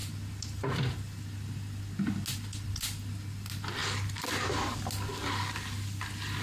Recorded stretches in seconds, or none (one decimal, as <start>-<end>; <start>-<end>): 0.0-6.4